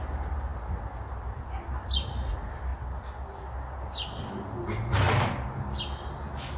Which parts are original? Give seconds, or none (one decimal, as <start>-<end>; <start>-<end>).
0.0-6.6